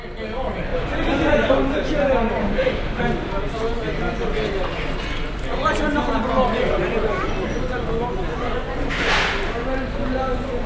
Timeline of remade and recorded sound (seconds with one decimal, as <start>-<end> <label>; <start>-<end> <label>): 0.0-2.4 recorded; 2.4-3.0 remade; 3.0-10.7 recorded